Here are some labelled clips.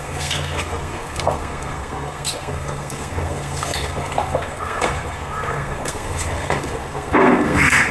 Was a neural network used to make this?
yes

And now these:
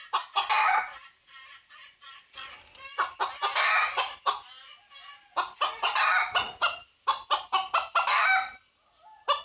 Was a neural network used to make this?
no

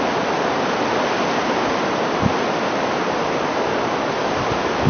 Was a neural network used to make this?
no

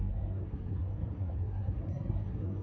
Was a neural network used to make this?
yes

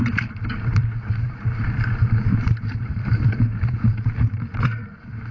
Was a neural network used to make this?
yes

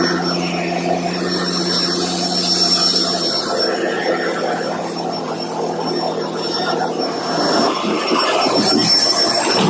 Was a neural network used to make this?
no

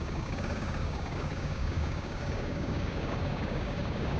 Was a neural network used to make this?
yes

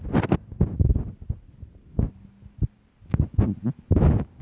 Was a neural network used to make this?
no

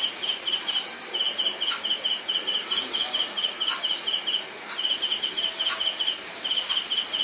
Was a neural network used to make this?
yes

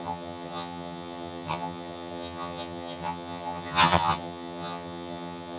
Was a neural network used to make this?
yes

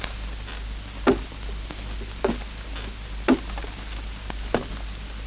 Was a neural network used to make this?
no